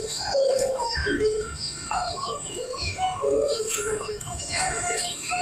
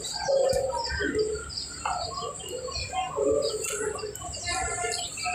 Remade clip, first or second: first